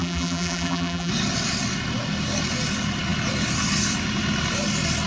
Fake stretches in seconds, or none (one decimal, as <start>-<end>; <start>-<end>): 0.0-1.1